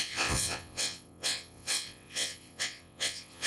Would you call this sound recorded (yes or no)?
no